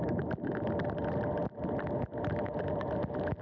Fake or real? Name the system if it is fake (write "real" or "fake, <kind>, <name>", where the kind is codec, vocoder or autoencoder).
real